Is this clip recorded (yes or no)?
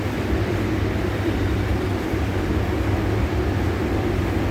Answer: no